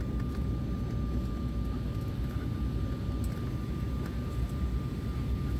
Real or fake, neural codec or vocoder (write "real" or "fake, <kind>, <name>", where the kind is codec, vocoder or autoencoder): real